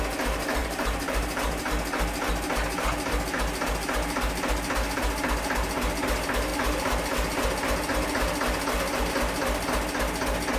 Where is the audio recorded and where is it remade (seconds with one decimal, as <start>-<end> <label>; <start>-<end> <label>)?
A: 0.0-0.6 recorded; 0.6-1.7 remade; 1.7-10.6 recorded